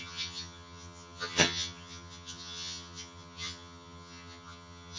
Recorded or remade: remade